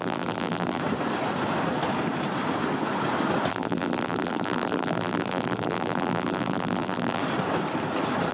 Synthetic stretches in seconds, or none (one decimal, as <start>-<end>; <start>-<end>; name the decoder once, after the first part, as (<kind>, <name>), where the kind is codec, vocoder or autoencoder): 0.0-0.8 (vocoder, BigVGAN v2); 3.5-7.2